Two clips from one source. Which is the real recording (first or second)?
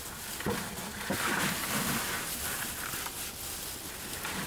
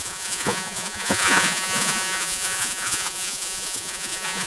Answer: first